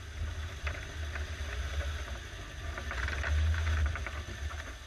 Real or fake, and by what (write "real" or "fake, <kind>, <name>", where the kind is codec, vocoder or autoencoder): real